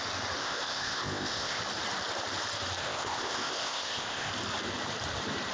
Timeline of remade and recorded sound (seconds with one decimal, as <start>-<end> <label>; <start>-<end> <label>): 0.0-0.4 recorded; 0.4-1.6 remade; 1.6-2.8 recorded; 2.8-4.3 remade; 4.3-5.5 recorded

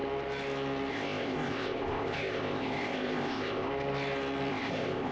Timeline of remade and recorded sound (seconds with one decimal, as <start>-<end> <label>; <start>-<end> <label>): 0.0-0.9 recorded; 0.9-3.7 remade; 3.7-4.5 recorded; 4.5-5.1 remade

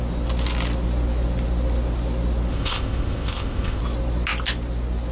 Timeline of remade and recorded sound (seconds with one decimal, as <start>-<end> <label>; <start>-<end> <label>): 0.0-2.5 recorded; 2.5-3.8 remade; 3.8-5.1 recorded

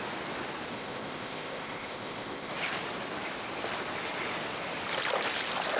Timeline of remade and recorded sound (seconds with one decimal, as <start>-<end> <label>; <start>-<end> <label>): 0.0-0.7 recorded; 0.7-2.5 remade; 2.5-5.8 recorded